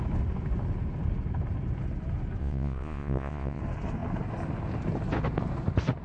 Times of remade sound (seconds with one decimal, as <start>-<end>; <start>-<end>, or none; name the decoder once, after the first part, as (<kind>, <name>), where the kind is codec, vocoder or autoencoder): 2.4-3.6 (vocoder, Vocos)